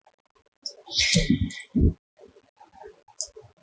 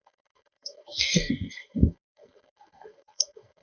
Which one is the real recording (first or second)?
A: first